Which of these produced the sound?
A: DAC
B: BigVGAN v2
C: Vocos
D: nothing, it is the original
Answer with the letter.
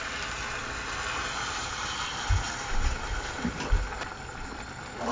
D